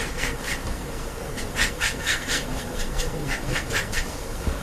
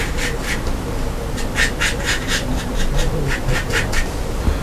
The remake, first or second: first